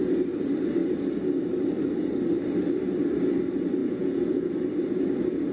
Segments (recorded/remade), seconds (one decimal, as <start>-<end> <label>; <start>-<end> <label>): 0.0-3.8 recorded; 3.8-4.5 remade; 4.5-5.5 recorded